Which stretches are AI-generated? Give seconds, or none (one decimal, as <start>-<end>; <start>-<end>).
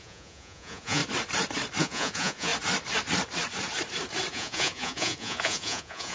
0.0-1.0; 1.8-2.5; 4.3-6.1